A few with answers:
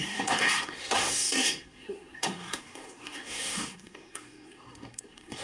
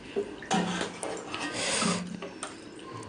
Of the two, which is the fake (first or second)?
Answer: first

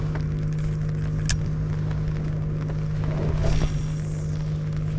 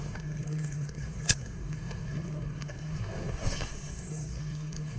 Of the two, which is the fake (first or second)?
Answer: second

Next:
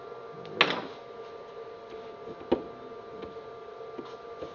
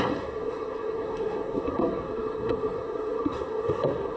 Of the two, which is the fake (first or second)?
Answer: second